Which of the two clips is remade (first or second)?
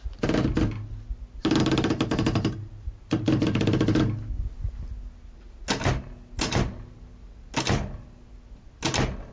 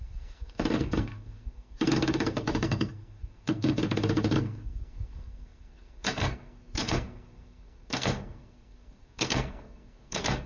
second